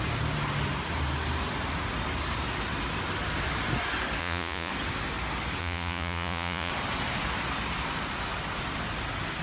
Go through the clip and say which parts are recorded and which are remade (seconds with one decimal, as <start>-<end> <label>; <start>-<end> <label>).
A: 0.0-4.2 recorded; 4.2-4.7 remade; 4.7-5.6 recorded; 5.6-6.7 remade; 6.7-9.4 recorded

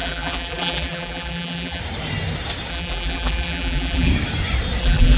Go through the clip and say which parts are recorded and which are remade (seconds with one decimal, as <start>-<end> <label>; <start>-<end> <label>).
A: 0.0-1.8 remade; 1.8-2.7 recorded; 2.7-4.1 remade; 4.1-4.8 recorded; 4.8-5.2 remade